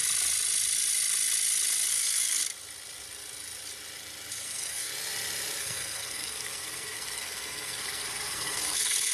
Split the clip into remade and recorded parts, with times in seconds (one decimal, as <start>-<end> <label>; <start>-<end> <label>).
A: 0.0-1.9 recorded; 1.9-2.4 remade; 2.4-4.3 recorded; 4.3-4.9 remade; 4.9-5.6 recorded; 5.6-9.1 remade